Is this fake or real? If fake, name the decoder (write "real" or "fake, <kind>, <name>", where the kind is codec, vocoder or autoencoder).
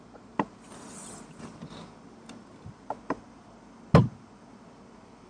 real